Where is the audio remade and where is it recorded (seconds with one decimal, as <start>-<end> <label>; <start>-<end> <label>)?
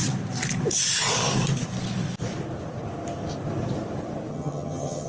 0.0-4.3 recorded; 4.3-5.1 remade